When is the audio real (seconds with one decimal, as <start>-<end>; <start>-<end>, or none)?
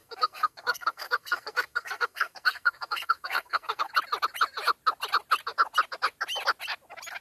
3.9-7.2